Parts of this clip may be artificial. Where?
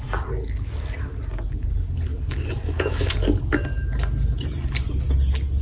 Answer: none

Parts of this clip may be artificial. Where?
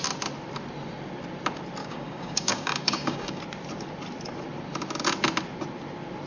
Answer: 1.8-3.4 (codec, DAC)